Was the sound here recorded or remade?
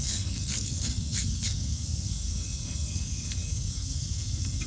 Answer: remade